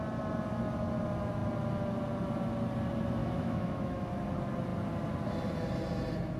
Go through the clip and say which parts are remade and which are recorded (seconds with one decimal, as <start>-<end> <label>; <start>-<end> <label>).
0.0-3.2 recorded; 3.2-4.1 remade; 4.1-6.4 recorded